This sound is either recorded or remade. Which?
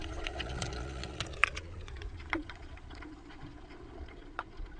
remade